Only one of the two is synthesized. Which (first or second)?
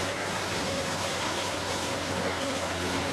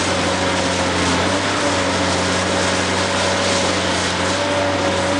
first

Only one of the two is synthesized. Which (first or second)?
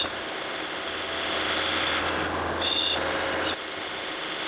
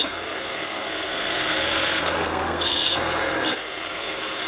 second